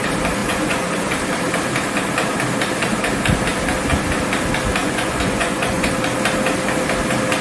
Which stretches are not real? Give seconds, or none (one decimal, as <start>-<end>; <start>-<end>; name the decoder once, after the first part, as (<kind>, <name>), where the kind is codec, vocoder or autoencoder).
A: 0.4-1.1 (vocoder, Vocos); 4.8-5.9